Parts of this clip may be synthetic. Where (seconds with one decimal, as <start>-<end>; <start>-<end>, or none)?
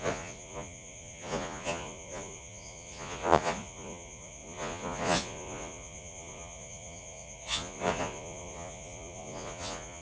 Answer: 0.0-10.0